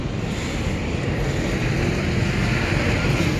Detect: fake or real real